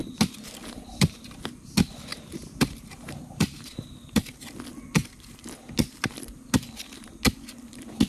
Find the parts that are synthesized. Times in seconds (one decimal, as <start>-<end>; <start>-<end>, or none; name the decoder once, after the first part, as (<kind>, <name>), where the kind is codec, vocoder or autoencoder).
0.6-1.2 (vocoder, BigVGAN v2); 2.1-4.2